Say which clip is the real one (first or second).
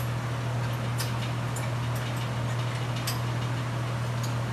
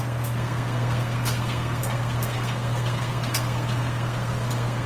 first